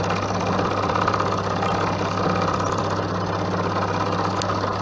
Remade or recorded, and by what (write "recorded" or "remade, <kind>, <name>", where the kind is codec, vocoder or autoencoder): remade, vocoder, BigVGAN v2